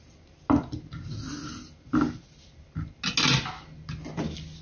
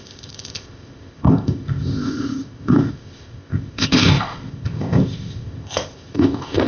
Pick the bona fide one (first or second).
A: first